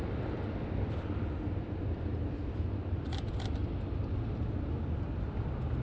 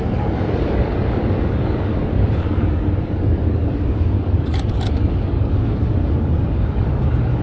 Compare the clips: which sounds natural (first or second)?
first